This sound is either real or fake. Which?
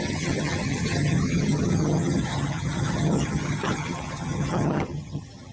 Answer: fake